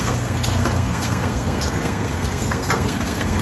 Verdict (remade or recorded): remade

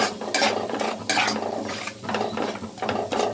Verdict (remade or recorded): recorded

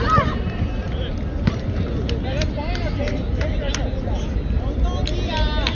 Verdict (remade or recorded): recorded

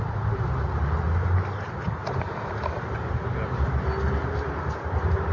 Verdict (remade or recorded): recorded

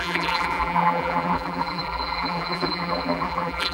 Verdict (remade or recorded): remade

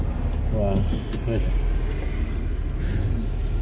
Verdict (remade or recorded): recorded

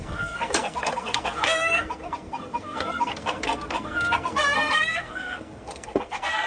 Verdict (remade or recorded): remade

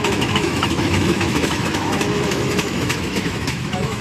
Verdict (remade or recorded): remade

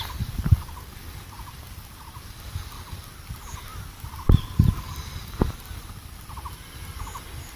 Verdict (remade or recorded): remade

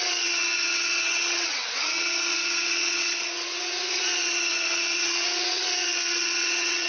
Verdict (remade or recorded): remade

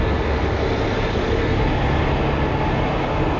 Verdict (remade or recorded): recorded